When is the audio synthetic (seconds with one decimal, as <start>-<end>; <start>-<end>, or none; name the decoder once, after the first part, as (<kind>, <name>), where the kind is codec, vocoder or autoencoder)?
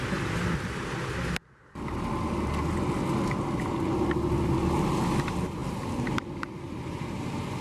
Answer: none